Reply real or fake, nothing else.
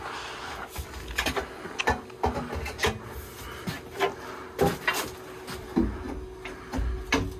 real